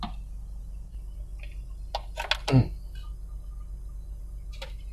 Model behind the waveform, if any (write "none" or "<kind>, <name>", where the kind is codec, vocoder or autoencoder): none